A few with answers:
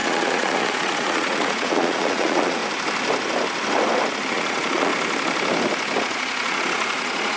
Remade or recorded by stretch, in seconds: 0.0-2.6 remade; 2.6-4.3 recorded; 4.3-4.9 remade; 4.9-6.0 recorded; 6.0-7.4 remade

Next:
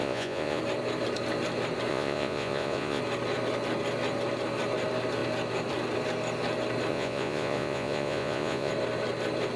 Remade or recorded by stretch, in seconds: 0.0-0.6 remade; 0.6-1.9 recorded; 1.9-3.0 remade; 3.0-6.9 recorded; 6.9-8.7 remade; 8.7-9.6 recorded

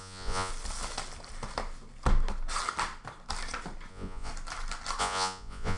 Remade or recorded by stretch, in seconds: 0.0-0.5 remade; 0.5-3.9 recorded; 3.9-4.3 remade; 4.3-5.0 recorded; 5.0-5.8 remade

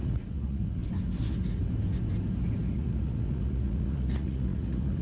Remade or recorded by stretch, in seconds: 0.0-0.8 remade; 0.8-2.7 recorded; 2.7-5.0 remade

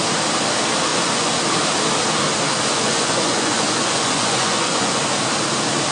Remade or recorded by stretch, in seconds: 0.0-0.9 recorded; 0.9-1.4 remade; 1.4-2.7 recorded; 2.7-5.0 remade; 5.0-5.9 recorded

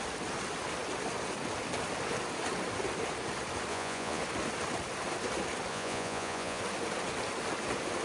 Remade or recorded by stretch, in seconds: 0.0-3.7 recorded; 3.7-4.2 remade; 4.2-5.7 recorded; 5.7-6.6 remade; 6.6-8.0 recorded

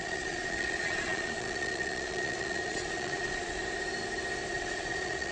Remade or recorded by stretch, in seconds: 0.0-3.6 remade; 3.6-4.5 recorded; 4.5-5.3 remade